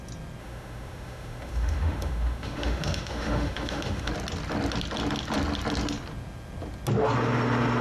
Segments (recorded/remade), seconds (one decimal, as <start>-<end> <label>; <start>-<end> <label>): 0.0-0.4 recorded; 0.4-4.1 remade; 4.1-7.8 recorded